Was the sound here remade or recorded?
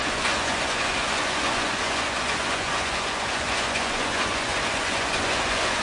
remade